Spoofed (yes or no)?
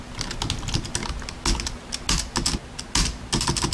no